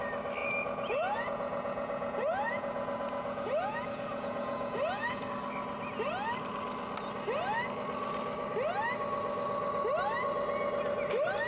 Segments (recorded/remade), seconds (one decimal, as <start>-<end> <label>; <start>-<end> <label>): 0.0-0.4 recorded; 0.4-5.3 remade; 5.3-11.5 recorded